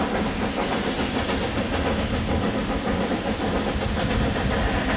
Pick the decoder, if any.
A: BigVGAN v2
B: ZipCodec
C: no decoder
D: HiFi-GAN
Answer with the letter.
C